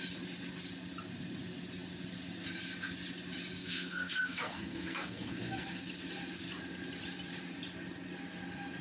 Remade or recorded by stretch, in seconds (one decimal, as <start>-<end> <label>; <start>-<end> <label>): 0.0-3.6 recorded; 3.6-5.9 remade; 5.9-8.8 recorded